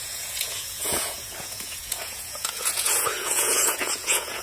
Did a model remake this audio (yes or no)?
yes